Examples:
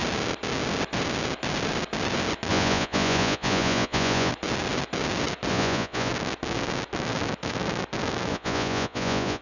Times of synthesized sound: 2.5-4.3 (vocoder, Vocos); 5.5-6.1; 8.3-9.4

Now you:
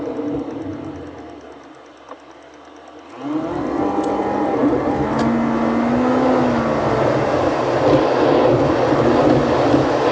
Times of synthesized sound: none

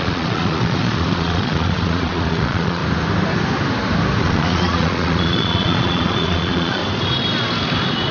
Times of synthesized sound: 0.0-2.8 (vocoder, Vocos); 4.2-6.8

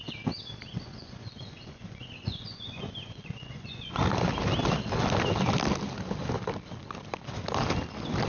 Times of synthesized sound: 0.7-4.0 (vocoder, Vocos)

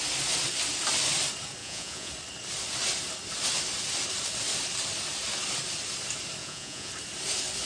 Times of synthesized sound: 1.6-2.1 (vocoder, Vocos); 6.4-6.9

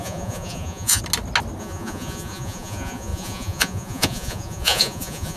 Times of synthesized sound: 0.0-1.0 (vocoder, Vocos); 1.6-5.4